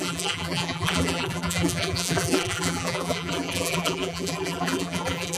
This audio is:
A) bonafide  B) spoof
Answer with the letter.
B